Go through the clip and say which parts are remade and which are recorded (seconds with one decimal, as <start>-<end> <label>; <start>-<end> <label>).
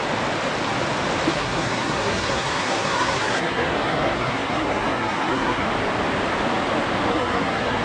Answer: 0.0-1.3 recorded; 1.3-5.7 remade; 5.7-7.1 recorded; 7.1-7.8 remade